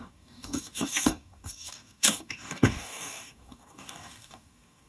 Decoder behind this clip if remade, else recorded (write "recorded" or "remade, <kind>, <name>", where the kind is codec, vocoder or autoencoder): remade, codec, DAC